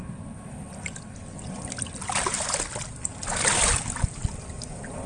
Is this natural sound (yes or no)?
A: yes